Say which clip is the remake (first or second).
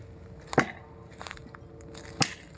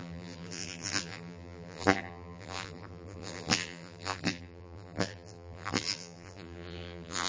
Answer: second